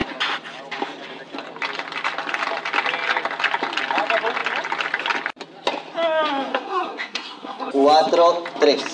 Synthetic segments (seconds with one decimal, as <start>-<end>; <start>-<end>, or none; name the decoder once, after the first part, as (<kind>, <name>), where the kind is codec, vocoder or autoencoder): 6.5-7.7 (codec, SNAC)